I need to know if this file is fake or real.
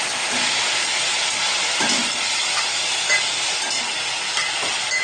real